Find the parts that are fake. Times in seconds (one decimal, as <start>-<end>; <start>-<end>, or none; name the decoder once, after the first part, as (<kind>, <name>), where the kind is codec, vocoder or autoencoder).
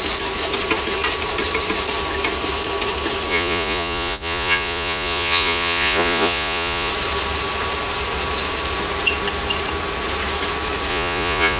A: 3.3-6.9 (vocoder, Vocos); 10.9-11.6